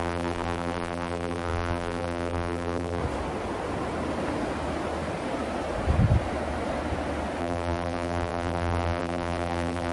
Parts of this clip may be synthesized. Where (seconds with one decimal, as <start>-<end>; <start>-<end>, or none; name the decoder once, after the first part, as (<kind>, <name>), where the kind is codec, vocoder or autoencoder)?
0.0-3.0 (vocoder, BigVGAN v2); 7.4-9.9